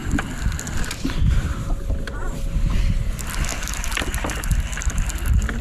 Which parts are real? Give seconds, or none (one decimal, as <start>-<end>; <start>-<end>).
0.0-2.2; 3.0-5.6

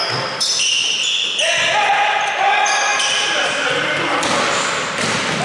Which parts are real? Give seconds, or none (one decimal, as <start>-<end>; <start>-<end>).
0.0-5.4

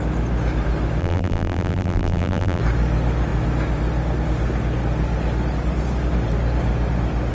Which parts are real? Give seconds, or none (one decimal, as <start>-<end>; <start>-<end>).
0.0-1.0; 2.6-7.3

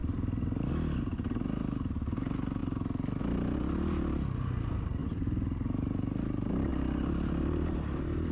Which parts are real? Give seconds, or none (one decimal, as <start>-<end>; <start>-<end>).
0.7-8.3

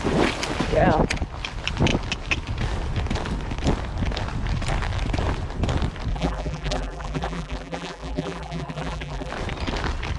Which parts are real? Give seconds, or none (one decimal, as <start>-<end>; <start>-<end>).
0.0-6.1; 9.3-10.2